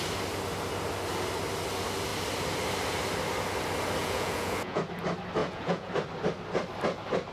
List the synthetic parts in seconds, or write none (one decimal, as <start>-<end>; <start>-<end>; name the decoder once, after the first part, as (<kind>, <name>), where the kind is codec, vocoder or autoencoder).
4.0-4.8 (vocoder, Vocos); 5.4-5.9